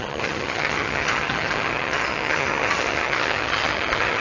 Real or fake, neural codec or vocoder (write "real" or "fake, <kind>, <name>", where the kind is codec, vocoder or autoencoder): fake, vocoder, HiFi-GAN